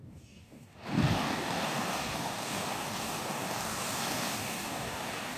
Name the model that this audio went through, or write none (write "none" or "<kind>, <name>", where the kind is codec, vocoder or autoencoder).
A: codec, DAC